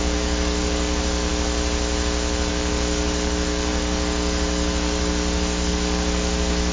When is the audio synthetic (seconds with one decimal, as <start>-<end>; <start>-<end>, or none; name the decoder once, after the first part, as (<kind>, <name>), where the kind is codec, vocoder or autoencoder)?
0.0-1.3 (codec, DAC); 2.5-6.7